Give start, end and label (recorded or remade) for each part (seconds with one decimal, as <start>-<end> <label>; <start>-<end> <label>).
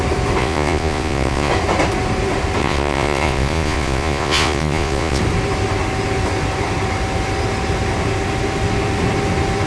0.0-0.4 recorded; 0.4-1.5 remade; 1.5-2.6 recorded; 2.6-5.2 remade; 5.2-9.7 recorded